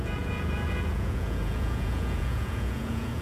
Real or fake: fake